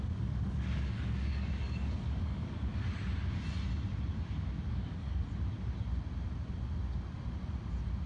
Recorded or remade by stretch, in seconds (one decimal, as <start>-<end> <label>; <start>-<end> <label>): 0.0-2.7 remade; 2.7-4.7 recorded; 4.7-5.2 remade; 5.2-8.1 recorded